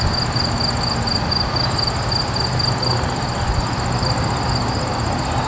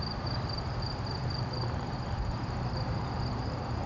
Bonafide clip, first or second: first